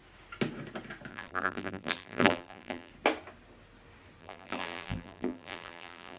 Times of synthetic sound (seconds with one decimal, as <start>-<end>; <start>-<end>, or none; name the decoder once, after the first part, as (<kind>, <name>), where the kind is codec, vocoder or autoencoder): 1.1-2.9 (vocoder, BigVGAN v2); 4.2-6.2